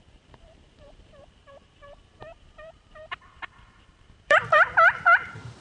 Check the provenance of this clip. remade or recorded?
remade